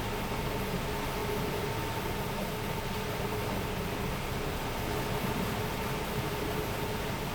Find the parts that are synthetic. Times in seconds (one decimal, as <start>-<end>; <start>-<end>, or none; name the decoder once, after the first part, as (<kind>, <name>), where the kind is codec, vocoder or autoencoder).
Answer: 1.2-1.7 (vocoder, BigVGAN v2)